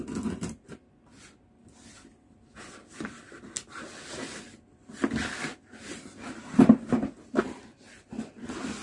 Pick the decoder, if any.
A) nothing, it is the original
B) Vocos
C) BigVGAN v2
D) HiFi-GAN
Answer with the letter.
A